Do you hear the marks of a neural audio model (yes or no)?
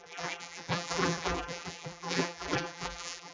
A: yes